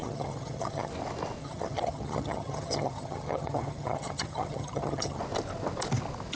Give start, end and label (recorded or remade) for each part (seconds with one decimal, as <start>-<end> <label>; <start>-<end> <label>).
0.0-0.9 remade; 0.9-1.4 recorded; 1.4-5.2 remade; 5.2-6.4 recorded